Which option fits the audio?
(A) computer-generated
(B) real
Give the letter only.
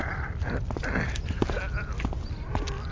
B